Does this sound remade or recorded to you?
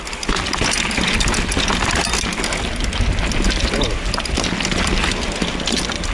recorded